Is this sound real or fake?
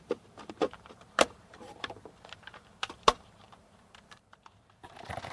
fake